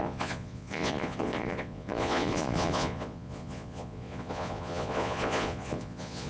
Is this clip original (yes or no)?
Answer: no